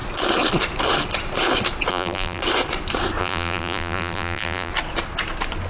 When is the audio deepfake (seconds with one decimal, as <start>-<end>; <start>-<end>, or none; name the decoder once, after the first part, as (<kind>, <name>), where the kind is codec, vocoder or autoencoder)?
1.9-2.4 (vocoder, BigVGAN v2); 3.2-4.7